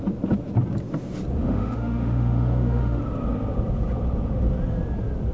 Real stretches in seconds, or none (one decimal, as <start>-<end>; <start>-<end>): 0.0-1.4; 3.0-5.3